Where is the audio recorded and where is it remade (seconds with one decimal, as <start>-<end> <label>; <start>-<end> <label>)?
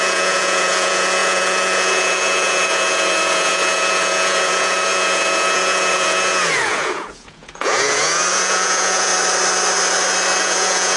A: 0.0-9.1 remade; 9.1-10.4 recorded; 10.4-11.0 remade